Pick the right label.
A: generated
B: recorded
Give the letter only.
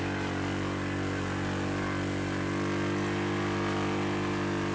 B